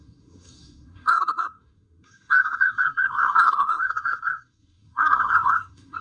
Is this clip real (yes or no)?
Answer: no